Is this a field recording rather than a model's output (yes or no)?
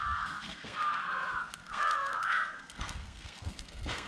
no